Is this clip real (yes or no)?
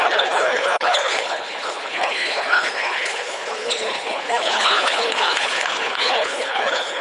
no